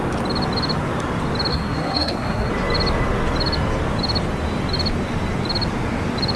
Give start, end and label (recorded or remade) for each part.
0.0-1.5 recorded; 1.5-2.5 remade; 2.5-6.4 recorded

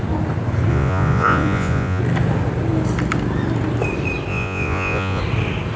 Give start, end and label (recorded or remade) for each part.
0.0-0.7 recorded; 0.7-2.0 remade; 2.0-4.3 recorded; 4.3-5.2 remade; 5.2-5.8 recorded